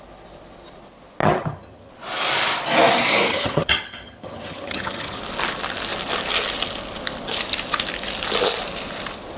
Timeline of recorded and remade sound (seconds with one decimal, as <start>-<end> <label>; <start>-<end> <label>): 0.0-1.2 recorded; 1.2-1.9 remade; 1.9-3.3 recorded; 3.3-5.2 remade; 5.2-9.4 recorded